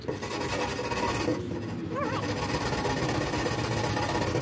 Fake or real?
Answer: real